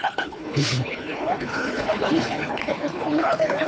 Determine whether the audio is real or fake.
fake